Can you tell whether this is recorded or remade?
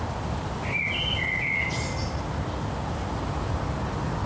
recorded